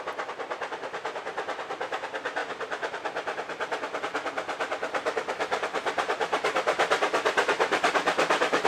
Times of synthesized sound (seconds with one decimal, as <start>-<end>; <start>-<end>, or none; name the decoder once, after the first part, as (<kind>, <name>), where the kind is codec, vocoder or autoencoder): none